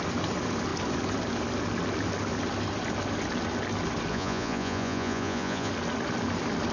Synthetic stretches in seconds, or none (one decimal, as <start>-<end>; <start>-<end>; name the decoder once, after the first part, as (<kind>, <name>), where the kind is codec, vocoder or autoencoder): 4.1-5.7 (vocoder, Vocos)